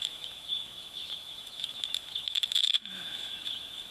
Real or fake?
fake